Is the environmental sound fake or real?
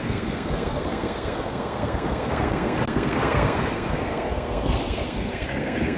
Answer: fake